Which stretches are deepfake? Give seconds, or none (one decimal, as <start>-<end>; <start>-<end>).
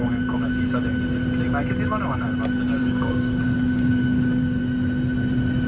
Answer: 2.8-4.6